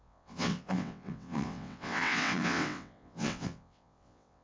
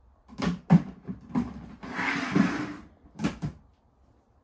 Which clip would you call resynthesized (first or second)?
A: first